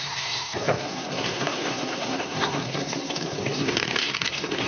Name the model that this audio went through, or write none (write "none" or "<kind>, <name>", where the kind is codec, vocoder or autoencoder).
codec, SNAC